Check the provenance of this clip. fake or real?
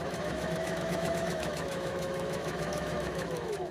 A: fake